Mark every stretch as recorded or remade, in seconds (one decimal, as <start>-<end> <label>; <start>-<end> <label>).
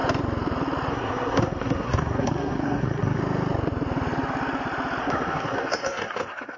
0.0-0.9 recorded; 0.9-3.2 remade; 3.2-5.0 recorded; 5.0-6.6 remade